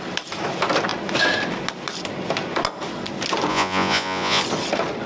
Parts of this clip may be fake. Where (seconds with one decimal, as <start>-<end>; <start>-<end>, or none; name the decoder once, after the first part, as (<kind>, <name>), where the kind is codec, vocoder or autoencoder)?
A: 3.5-4.4 (vocoder, Vocos)